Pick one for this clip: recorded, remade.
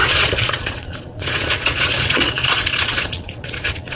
remade